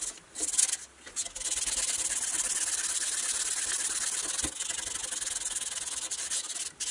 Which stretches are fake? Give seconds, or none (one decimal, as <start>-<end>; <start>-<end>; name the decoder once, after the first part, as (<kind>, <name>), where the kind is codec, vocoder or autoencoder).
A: none